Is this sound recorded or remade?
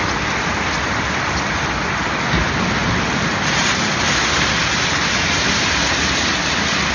recorded